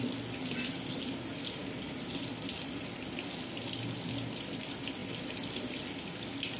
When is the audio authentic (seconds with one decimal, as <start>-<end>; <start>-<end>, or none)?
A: 0.0-6.6